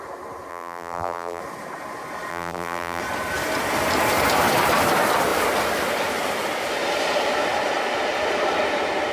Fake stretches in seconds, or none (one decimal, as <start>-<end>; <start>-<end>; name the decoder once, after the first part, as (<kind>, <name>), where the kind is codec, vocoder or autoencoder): 0.5-1.4 (vocoder, BigVGAN v2); 2.3-3.0